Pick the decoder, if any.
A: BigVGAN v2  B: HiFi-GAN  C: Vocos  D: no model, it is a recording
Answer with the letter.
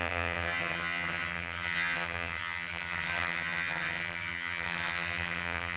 B